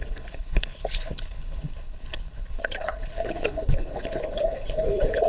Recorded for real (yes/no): no